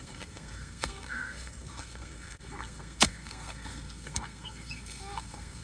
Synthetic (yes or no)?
yes